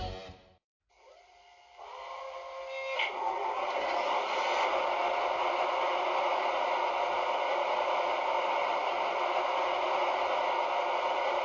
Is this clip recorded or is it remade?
recorded